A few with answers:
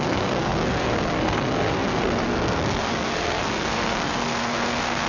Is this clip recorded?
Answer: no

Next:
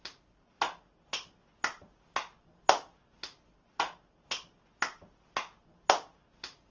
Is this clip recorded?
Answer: yes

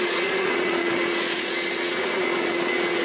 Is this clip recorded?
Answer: no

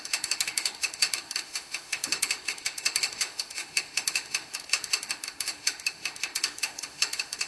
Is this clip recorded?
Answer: no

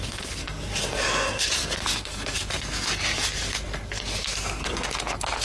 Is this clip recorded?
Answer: no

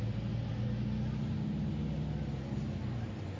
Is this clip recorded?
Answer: yes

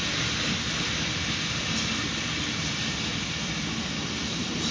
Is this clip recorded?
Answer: yes